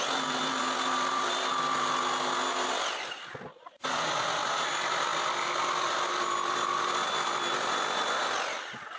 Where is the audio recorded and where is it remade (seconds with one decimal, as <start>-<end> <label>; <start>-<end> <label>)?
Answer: 0.0-9.0 recorded

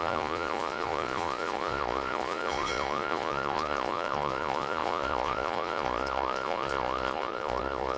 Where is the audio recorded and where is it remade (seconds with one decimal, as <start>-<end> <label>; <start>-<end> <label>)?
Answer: 0.0-8.0 remade

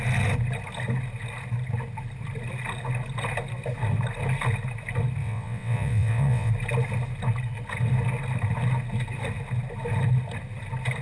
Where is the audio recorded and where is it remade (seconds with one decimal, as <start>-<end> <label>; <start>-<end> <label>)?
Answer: 0.0-5.2 recorded; 5.2-6.5 remade; 6.5-11.0 recorded